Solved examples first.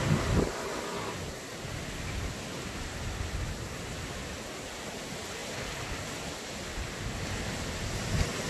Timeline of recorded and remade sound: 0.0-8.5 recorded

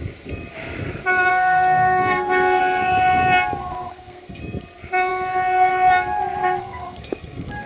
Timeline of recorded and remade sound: 0.0-1.3 recorded; 1.3-2.6 remade; 2.6-3.6 recorded; 3.6-4.4 remade; 4.4-6.4 recorded; 6.4-7.7 remade